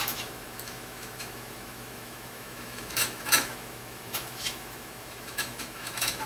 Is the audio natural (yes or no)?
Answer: no